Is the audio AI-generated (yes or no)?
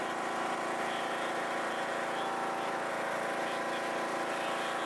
no